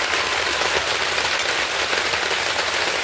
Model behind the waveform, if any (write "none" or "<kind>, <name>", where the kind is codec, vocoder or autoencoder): vocoder, BigVGAN v2